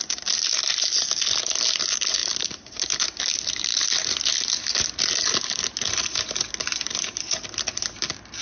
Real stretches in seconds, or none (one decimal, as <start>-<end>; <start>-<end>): 0.0-8.4